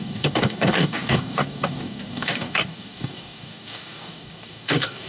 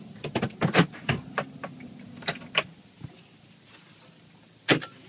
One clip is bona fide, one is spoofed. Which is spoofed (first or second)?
first